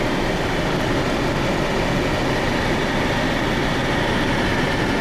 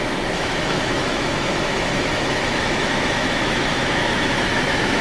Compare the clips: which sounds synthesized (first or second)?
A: second